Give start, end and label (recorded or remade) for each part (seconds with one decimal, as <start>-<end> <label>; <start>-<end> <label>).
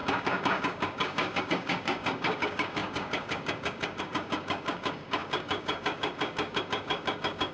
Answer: 0.0-7.5 remade